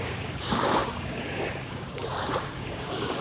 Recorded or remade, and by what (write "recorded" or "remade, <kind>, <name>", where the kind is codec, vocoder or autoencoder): remade, codec, DAC